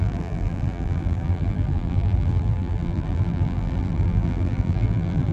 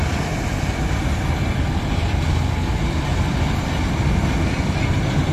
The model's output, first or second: first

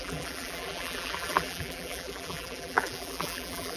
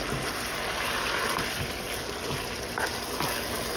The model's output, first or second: first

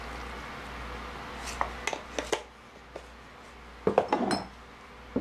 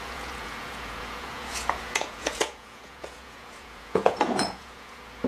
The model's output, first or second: second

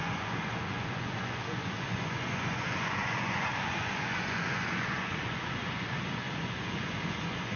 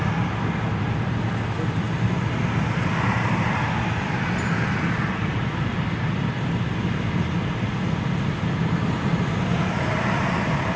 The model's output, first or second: first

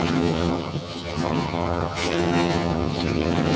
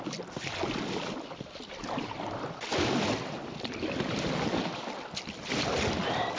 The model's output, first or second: first